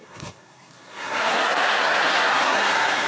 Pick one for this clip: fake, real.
fake